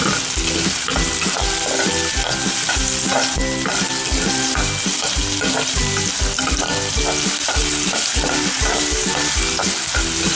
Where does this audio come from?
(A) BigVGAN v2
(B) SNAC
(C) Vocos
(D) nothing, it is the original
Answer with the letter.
D